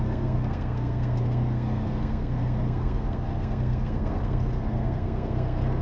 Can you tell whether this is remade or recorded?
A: remade